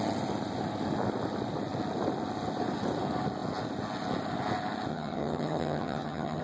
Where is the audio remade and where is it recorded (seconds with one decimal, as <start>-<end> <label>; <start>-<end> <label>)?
0.0-4.9 recorded; 4.9-6.4 remade